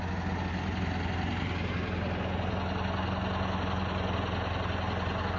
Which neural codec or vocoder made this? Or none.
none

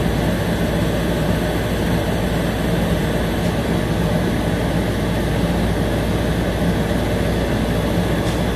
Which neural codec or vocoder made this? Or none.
none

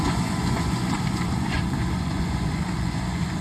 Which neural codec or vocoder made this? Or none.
vocoder, Vocos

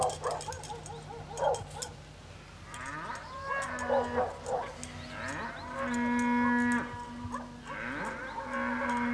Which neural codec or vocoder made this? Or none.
none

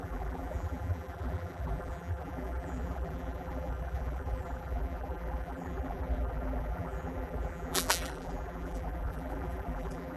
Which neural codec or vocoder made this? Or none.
vocoder, BigVGAN v2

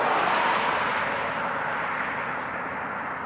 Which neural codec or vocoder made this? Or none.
none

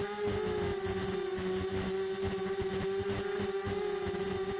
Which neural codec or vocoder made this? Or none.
none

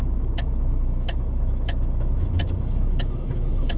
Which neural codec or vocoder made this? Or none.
autoencoder, DAC-VAE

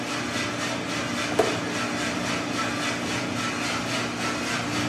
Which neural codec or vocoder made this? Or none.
none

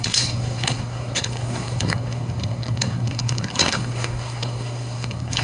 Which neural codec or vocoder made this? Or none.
codec, SNAC